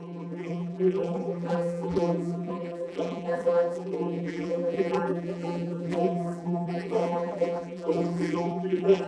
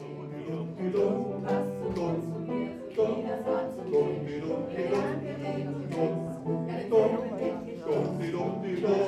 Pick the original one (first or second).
second